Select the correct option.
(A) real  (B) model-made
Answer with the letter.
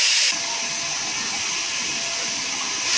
A